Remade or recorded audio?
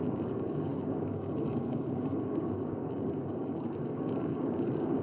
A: remade